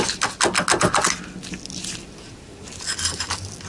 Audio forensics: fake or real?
real